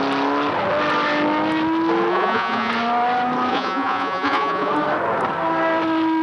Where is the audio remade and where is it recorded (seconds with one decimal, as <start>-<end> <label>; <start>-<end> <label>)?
0.0-2.1 recorded; 2.1-2.7 remade; 2.7-3.5 recorded; 3.5-4.7 remade; 4.7-6.2 recorded